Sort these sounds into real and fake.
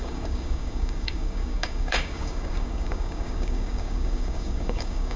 fake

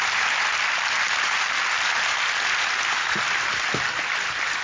real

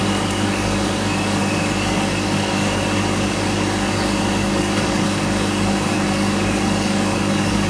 fake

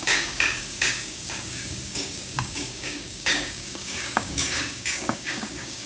fake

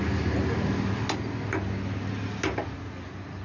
real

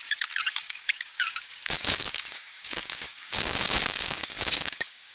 fake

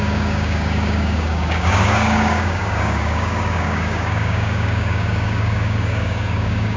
fake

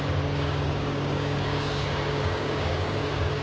fake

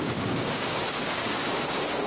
fake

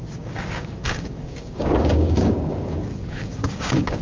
fake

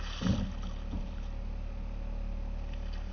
real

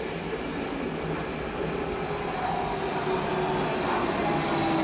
real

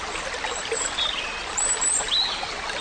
real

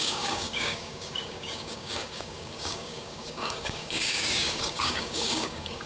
fake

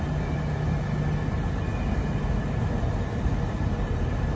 real